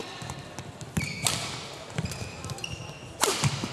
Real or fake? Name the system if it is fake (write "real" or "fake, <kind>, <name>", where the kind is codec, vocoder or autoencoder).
real